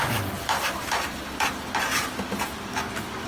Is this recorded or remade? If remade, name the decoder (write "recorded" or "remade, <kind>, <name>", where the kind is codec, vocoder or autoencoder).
remade, vocoder, BigVGAN v2